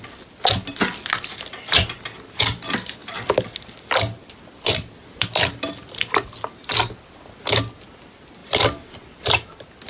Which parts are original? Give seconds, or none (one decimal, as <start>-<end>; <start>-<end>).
0.0-3.0; 6.3-8.4; 8.9-9.9